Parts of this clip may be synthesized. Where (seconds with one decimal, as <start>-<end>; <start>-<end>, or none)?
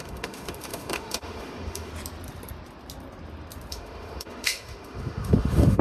0.0-1.9; 3.7-5.8